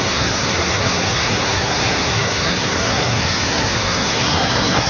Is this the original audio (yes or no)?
no